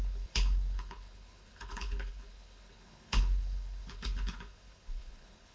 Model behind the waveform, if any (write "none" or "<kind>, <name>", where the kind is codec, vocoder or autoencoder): codec, HILCodec